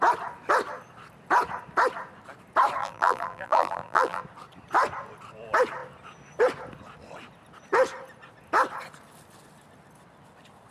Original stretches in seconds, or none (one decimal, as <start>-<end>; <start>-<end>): 0.0-2.8; 4.2-10.7